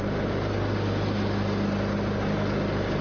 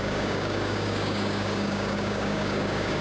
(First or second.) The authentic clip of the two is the first